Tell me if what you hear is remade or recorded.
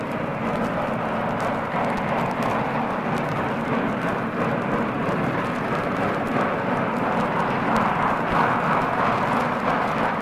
recorded